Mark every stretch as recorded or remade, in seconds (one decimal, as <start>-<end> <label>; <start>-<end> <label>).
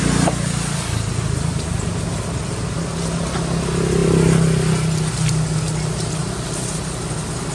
0.0-7.5 recorded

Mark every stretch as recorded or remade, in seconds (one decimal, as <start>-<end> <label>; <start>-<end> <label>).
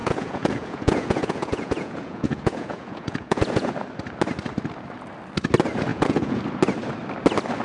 0.0-3.7 remade; 3.7-5.9 recorded; 5.9-6.4 remade; 6.4-7.6 recorded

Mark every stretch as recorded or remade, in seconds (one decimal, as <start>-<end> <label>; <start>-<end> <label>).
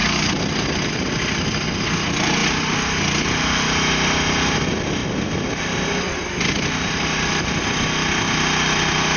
0.0-9.2 recorded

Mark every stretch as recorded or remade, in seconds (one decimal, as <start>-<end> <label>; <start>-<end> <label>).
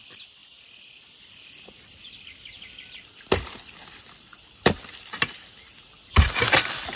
0.0-7.0 remade